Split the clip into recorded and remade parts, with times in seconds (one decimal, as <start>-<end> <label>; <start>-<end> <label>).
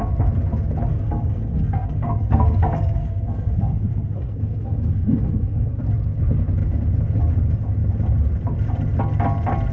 0.0-0.9 recorded; 0.9-5.8 remade; 5.8-9.7 recorded